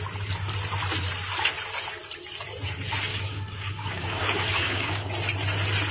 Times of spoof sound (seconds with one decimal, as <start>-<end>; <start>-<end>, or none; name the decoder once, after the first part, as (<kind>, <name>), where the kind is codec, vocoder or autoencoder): 3.1-5.1 (codec, DAC)